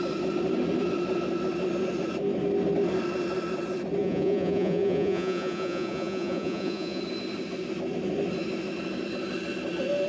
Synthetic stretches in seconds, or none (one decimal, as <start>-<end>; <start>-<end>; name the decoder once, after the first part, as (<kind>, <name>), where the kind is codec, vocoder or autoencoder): 4.0-7.0 (vocoder, Vocos)